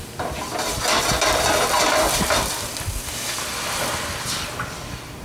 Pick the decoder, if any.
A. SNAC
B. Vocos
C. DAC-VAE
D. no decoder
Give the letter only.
D